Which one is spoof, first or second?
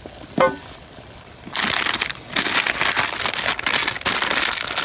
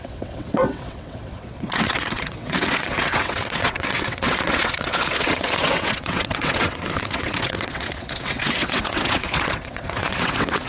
second